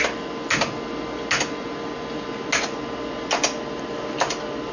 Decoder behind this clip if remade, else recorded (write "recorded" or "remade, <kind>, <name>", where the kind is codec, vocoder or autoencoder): recorded